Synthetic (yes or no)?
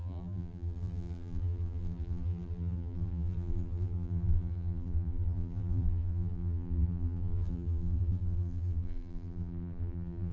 yes